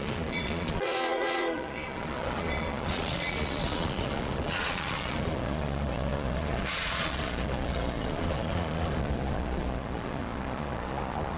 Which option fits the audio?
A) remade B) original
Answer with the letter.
A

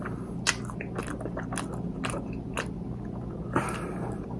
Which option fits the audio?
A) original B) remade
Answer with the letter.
A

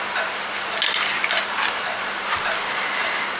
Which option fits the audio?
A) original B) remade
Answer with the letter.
A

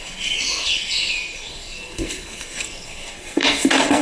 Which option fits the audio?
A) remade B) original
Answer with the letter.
A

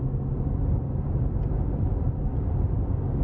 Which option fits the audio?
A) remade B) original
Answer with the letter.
B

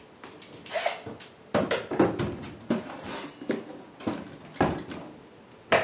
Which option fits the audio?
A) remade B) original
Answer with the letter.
B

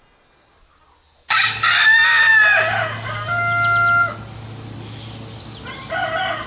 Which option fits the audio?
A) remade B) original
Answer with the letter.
B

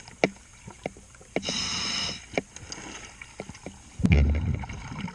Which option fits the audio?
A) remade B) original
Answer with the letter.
B